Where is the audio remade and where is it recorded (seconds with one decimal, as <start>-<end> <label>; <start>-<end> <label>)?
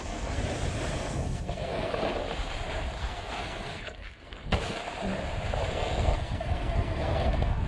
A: 0.0-0.4 remade; 0.4-0.9 recorded; 0.9-1.9 remade; 1.9-3.0 recorded; 3.0-4.8 remade; 4.8-5.7 recorded; 5.7-7.7 remade